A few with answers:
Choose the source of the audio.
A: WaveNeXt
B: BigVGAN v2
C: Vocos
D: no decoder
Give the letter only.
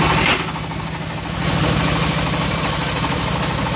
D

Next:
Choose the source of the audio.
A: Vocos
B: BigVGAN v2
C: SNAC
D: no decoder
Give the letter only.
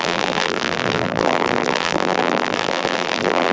B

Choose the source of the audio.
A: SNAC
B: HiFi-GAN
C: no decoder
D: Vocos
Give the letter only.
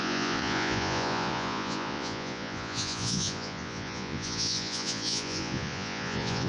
D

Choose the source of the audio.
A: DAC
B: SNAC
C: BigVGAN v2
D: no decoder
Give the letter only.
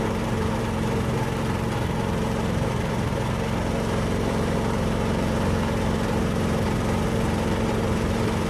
C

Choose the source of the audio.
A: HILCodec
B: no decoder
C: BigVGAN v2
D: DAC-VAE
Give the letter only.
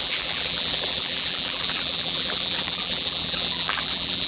C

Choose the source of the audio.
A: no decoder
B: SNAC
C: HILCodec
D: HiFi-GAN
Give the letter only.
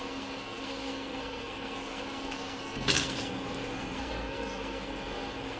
B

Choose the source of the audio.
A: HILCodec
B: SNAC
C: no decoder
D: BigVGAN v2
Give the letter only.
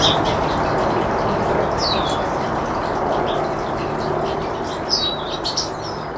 C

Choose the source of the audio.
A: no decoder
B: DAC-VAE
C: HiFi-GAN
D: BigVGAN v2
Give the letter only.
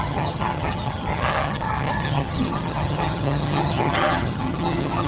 C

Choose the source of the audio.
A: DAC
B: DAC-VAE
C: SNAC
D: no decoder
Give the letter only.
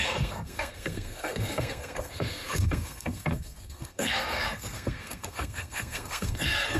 C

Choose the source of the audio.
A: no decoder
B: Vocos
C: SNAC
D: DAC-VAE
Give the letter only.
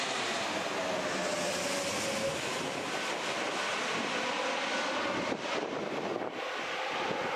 A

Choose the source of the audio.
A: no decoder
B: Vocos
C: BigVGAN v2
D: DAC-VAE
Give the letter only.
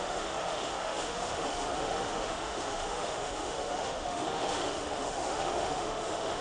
D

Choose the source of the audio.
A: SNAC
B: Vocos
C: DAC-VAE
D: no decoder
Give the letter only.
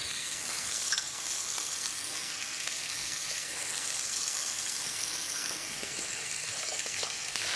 A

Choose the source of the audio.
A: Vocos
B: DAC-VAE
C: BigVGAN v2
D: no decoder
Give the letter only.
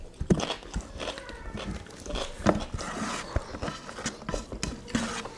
D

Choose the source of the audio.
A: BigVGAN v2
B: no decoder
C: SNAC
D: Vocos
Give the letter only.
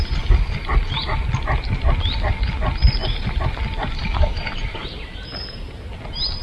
B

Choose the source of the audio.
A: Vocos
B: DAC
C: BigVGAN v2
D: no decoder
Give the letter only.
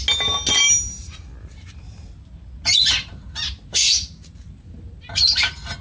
D